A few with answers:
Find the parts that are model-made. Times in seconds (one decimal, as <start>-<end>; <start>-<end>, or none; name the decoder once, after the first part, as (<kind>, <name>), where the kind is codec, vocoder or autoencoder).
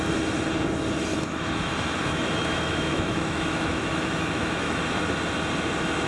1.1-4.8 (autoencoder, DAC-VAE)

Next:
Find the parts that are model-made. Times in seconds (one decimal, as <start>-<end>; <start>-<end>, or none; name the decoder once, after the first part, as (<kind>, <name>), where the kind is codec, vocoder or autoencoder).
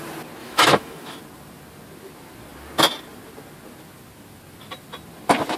0.4-1.2 (autoencoder, DAC-VAE)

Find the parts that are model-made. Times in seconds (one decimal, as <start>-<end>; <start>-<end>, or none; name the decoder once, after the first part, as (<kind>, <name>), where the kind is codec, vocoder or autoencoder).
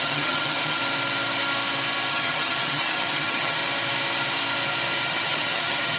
0.0-0.8 (vocoder, HiFi-GAN); 2.1-3.6; 5.1-6.0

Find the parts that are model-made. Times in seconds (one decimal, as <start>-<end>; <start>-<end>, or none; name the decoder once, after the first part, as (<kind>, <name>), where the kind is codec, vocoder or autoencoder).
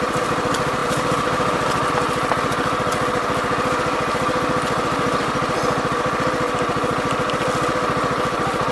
none